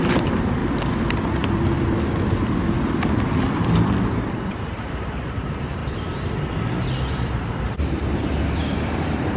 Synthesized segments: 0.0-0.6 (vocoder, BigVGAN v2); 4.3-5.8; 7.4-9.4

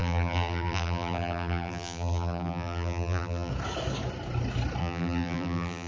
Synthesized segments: 0.0-3.5 (vocoder, BigVGAN v2); 4.8-5.9

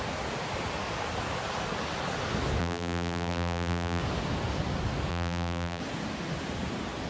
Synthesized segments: 2.6-4.0 (vocoder, BigVGAN v2); 5.1-5.8

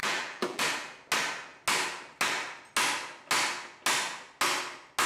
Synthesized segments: 0.0-0.6 (vocoder, BigVGAN v2)

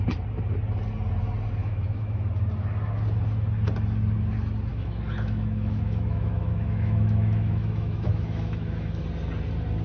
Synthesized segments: 1.6-2.3 (autoencoder, DAC-VAE); 4.7-9.0

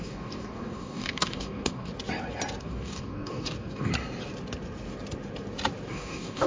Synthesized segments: 0.0-1.9 (codec, DAC); 2.6-3.9; 5.9-6.5

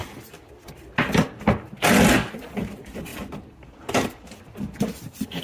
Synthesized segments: 3.1-5.4 (vocoder, BigVGAN v2)